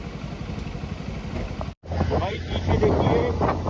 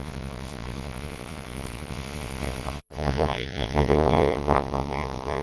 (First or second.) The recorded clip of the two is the first